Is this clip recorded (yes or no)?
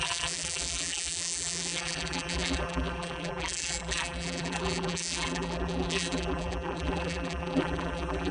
no